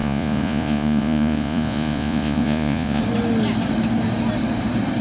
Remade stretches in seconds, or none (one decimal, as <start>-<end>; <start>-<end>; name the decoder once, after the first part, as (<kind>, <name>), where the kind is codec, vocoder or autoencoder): 0.0-3.0 (vocoder, Vocos)